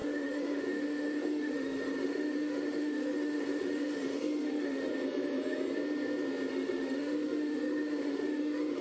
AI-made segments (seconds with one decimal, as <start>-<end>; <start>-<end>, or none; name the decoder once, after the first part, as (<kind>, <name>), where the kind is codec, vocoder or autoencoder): 0.0-4.9 (autoencoder, DAC-VAE); 6.5-8.8